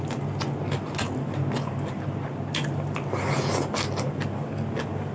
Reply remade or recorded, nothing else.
recorded